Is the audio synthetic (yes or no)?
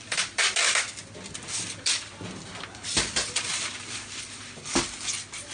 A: no